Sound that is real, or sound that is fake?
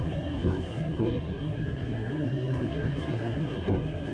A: fake